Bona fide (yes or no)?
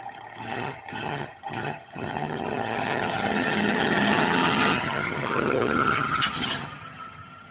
no